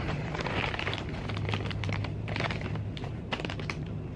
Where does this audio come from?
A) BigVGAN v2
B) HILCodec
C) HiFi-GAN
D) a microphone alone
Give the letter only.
A